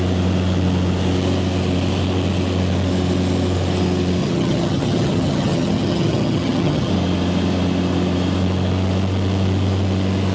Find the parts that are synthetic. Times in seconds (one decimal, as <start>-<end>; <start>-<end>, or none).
4.2-6.9